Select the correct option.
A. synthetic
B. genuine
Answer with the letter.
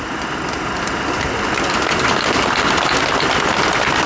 B